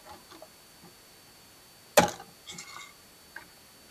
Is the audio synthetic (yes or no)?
no